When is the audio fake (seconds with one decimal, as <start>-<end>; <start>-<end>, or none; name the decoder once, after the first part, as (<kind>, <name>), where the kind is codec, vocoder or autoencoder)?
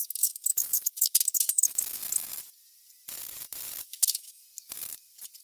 0.0-2.0 (autoencoder, DAC-VAE); 3.8-4.4